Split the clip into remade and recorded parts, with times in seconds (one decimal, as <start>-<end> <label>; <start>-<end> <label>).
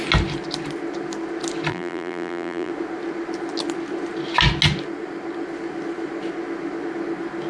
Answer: 0.0-1.7 recorded; 1.7-2.7 remade; 2.7-7.5 recorded